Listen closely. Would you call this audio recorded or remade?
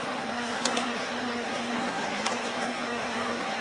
remade